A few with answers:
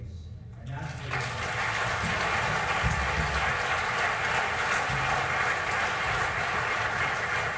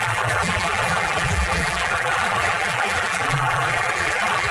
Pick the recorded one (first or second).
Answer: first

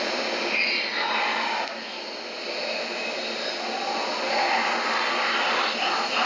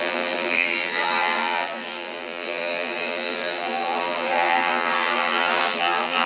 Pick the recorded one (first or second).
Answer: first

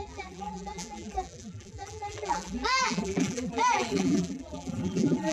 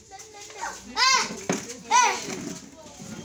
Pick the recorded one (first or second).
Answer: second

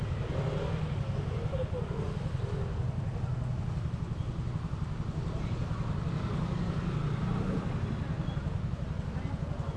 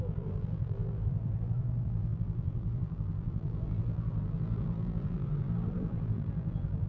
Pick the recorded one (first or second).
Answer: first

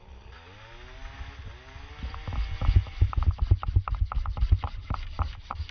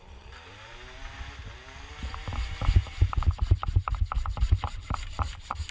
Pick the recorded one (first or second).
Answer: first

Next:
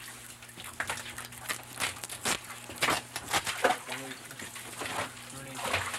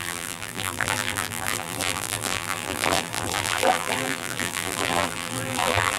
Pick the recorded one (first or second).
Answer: first